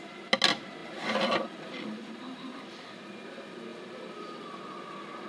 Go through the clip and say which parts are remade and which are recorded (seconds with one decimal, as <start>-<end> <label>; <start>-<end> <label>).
0.0-0.8 recorded; 0.8-2.9 remade; 2.9-3.7 recorded; 3.7-4.6 remade; 4.6-5.3 recorded